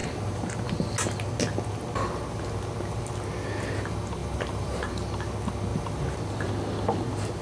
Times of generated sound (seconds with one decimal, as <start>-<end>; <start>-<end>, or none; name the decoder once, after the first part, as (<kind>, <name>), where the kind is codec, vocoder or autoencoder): 0.0-0.7 (vocoder, BigVGAN v2); 4.2-4.9; 5.7-6.5